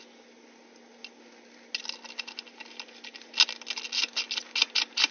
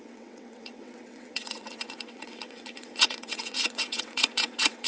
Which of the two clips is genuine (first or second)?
first